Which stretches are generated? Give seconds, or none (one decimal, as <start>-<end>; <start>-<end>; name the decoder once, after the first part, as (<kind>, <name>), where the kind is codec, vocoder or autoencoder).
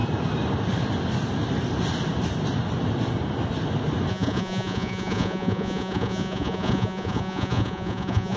4.1-8.4 (vocoder, Vocos)